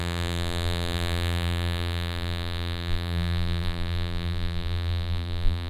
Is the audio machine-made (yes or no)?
yes